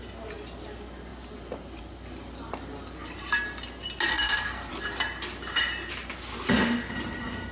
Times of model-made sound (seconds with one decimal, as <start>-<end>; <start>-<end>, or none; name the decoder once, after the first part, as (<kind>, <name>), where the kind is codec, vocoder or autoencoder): 4.1-4.7 (codec, SNAC)

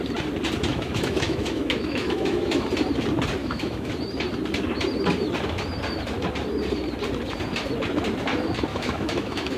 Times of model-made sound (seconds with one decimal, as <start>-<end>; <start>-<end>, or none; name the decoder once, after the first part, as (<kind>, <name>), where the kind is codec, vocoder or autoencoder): 0.7-2.7 (autoencoder, DAC-VAE); 3.4-3.9; 8.7-9.6

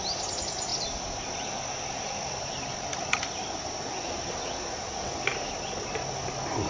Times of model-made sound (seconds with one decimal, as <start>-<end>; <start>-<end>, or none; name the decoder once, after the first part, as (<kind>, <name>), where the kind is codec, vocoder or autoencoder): none

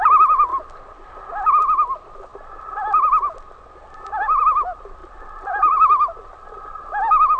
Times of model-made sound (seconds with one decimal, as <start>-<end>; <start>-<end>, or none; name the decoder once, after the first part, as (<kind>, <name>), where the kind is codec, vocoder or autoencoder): 5.0-6.1 (vocoder, BigVGAN v2)

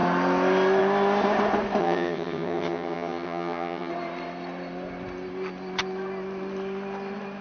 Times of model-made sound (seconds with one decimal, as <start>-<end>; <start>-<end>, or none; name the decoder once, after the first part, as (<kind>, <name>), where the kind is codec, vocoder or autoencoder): 1.8-3.9 (vocoder, HiFi-GAN)

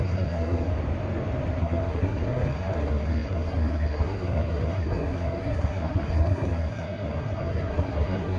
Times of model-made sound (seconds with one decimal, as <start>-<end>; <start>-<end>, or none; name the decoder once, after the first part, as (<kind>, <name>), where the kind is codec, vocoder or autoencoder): 0.0-0.7 (codec, SNAC); 1.6-8.4

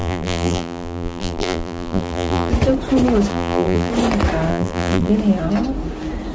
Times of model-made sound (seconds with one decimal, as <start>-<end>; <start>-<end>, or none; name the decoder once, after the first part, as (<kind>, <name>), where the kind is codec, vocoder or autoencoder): 0.0-2.5 (vocoder, BigVGAN v2); 3.3-3.9; 4.5-5.1